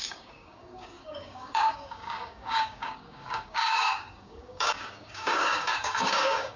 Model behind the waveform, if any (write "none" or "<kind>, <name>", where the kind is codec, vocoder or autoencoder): codec, DAC